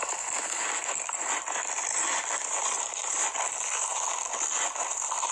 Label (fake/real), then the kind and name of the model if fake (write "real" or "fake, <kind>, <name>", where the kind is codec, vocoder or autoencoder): fake, vocoder, BigVGAN v2